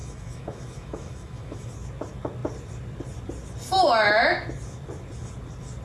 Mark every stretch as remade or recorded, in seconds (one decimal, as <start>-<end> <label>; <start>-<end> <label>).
0.0-1.7 remade; 1.7-5.8 recorded

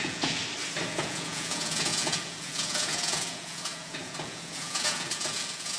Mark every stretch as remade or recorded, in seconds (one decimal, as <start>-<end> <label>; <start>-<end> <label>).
0.0-0.4 remade; 0.4-0.9 recorded; 0.9-5.8 remade

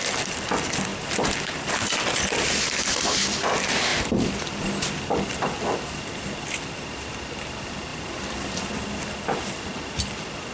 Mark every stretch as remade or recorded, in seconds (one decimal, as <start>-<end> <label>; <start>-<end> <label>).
0.0-0.9 recorded; 0.9-3.0 remade; 3.0-3.9 recorded; 3.9-4.5 remade; 4.5-7.9 recorded; 7.9-8.7 remade; 8.7-10.5 recorded